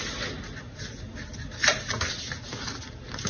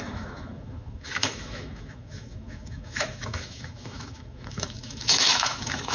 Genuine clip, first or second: first